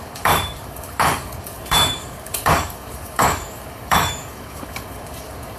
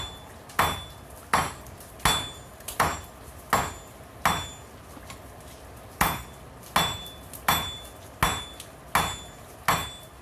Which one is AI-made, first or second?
first